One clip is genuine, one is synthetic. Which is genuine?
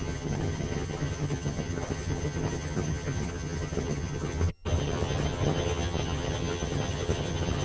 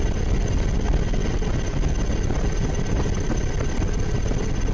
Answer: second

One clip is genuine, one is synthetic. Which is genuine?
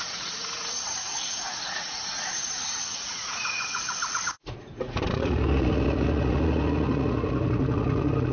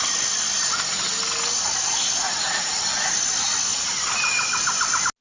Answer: second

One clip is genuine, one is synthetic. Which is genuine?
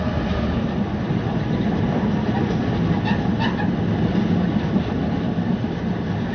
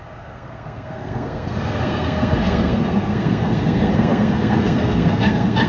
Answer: first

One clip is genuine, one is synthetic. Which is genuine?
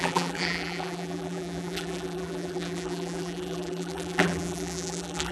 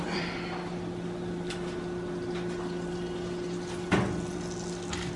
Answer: second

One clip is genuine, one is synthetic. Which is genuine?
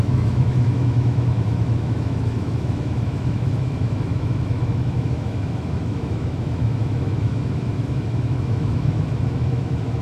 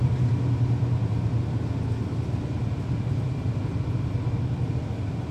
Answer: second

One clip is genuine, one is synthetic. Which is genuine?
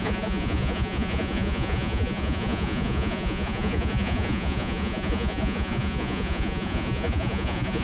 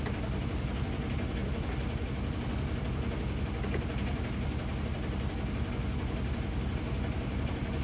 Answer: second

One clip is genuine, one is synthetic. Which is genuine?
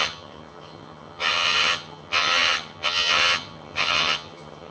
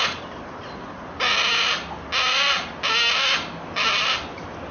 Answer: second